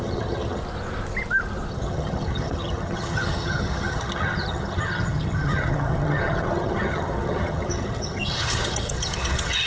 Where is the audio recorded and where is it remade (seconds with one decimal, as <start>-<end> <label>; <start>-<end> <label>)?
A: 0.0-0.6 remade; 0.6-1.7 recorded; 1.7-9.7 remade